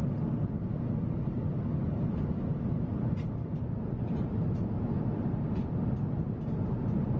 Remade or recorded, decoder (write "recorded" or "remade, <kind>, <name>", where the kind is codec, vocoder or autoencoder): recorded